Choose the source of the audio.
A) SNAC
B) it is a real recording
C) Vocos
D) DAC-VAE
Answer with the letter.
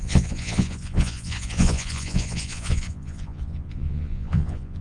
C